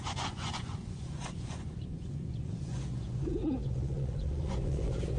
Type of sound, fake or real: fake